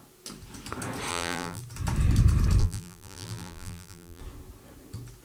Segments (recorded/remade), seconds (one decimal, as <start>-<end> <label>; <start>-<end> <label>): 0.0-1.1 recorded; 1.1-1.6 remade; 1.6-2.6 recorded; 2.6-4.2 remade; 4.2-5.2 recorded